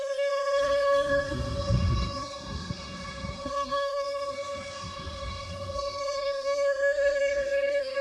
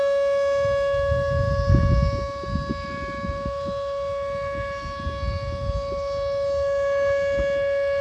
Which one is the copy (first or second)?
first